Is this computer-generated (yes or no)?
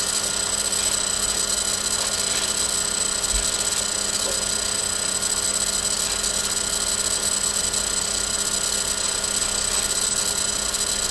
no